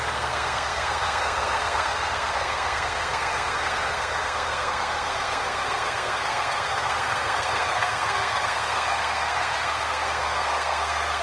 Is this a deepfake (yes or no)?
yes